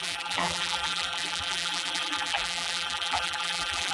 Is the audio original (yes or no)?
no